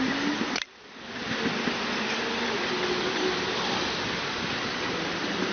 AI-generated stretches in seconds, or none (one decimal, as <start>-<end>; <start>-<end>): none